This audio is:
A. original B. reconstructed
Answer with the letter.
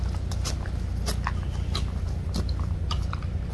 A